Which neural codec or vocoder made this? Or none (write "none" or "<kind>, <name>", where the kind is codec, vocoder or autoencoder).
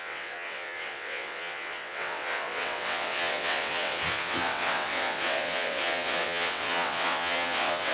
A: vocoder, WaveNeXt